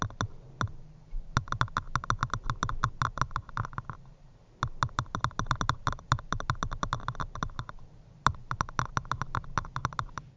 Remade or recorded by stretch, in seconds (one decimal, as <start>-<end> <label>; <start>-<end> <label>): 0.0-10.4 recorded